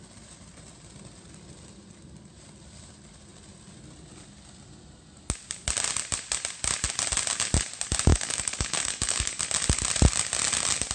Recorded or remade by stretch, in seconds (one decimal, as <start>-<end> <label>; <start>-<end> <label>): 0.0-8.1 recorded; 8.1-9.4 remade; 9.4-10.9 recorded